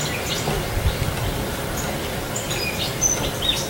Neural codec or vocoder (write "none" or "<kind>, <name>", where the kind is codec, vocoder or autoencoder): none